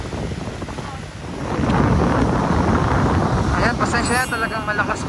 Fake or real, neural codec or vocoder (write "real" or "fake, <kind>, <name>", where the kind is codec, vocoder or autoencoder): real